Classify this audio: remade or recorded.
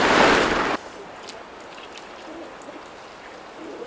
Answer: recorded